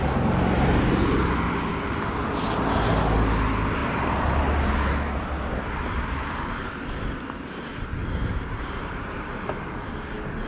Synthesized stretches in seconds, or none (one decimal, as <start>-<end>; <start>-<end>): 3.8-6.0; 8.0-9.9